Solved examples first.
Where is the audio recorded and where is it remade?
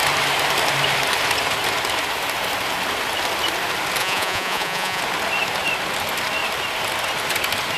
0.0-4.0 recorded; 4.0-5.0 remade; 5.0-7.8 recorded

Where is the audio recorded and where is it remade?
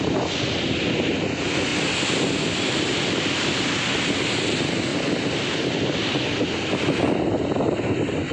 0.0-1.7 recorded; 1.7-3.3 remade; 3.3-4.9 recorded; 4.9-6.2 remade; 6.2-8.3 recorded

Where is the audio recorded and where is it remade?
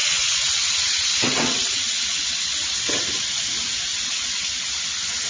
0.0-3.2 remade; 3.2-3.9 recorded; 3.9-4.7 remade; 4.7-5.3 recorded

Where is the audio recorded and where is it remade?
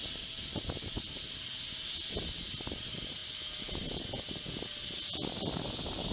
0.0-6.1 recorded